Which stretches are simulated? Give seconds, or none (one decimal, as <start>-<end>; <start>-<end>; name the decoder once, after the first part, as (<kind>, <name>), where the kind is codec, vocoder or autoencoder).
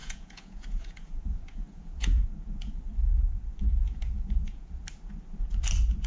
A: 0.0-2.8 (vocoder, Vocos); 3.7-4.7